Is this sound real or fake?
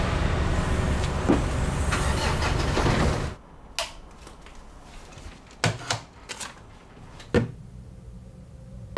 real